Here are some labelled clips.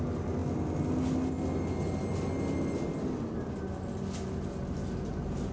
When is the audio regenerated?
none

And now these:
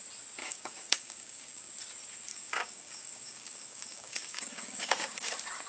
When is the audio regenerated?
0.4-1.7; 2.3-5.3

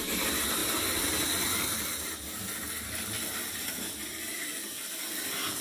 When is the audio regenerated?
none

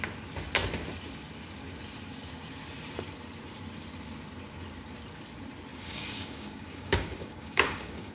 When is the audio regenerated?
5.7-8.1

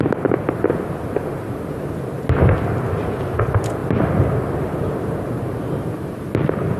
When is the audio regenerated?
none